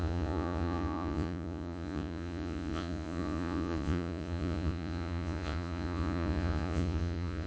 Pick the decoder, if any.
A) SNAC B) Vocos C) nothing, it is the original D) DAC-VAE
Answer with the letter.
B